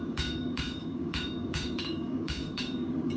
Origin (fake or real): fake